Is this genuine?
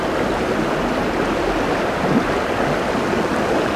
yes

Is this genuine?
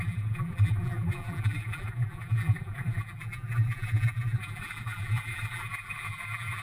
no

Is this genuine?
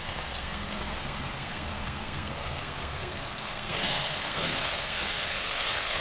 no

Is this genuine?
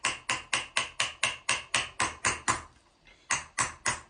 yes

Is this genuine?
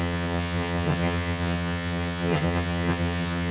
no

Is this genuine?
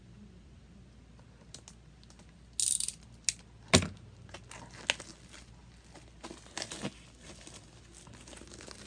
yes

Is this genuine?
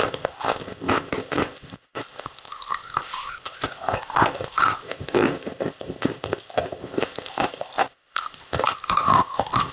no